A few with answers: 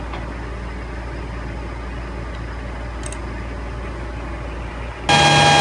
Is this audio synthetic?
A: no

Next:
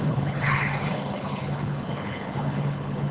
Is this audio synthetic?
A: yes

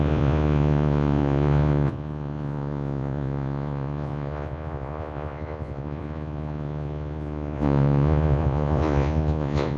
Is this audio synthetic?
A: yes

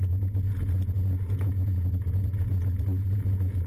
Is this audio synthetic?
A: yes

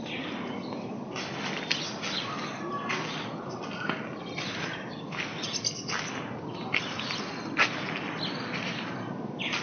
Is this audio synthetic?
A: no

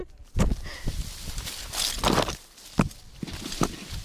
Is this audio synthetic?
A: no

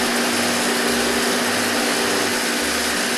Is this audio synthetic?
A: no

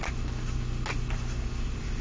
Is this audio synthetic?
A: no